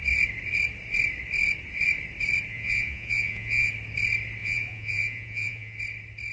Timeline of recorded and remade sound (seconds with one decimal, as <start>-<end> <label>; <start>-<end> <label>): 0.0-2.5 recorded; 2.5-3.7 remade; 3.7-4.4 recorded; 4.4-5.8 remade; 5.8-6.3 recorded